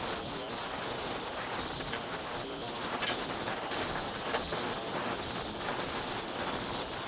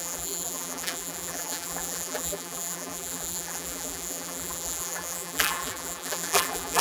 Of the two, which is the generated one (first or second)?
second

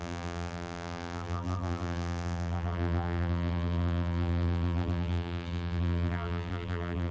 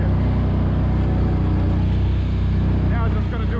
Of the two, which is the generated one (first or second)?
first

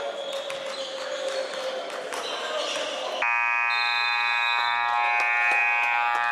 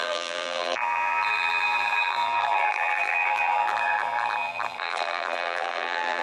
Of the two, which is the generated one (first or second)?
second